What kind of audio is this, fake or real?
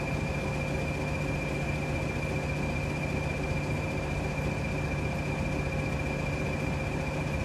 real